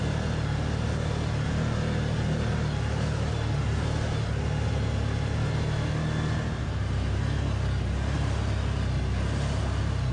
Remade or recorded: recorded